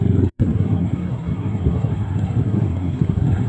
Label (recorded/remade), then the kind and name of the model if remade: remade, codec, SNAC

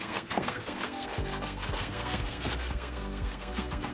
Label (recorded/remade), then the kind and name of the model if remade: remade, codec, SNAC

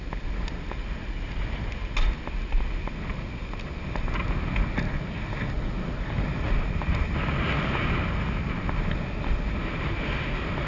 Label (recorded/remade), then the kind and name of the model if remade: recorded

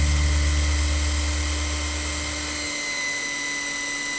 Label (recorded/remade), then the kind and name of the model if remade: recorded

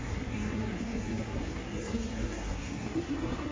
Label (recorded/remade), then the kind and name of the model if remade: remade, codec, SNAC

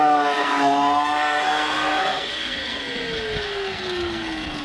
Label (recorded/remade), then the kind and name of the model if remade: remade, codec, SNAC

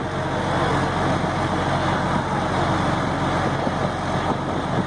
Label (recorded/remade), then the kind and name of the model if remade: recorded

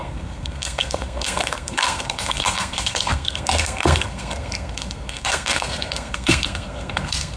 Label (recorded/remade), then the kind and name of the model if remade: remade, codec, SNAC